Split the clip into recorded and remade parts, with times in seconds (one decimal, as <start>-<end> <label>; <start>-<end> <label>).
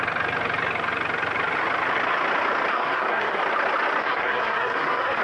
0.0-2.7 recorded; 2.7-3.4 remade; 3.4-4.0 recorded; 4.0-5.2 remade